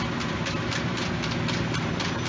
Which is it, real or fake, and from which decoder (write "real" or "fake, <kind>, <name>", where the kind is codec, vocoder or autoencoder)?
real